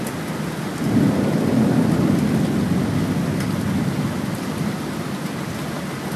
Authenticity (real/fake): real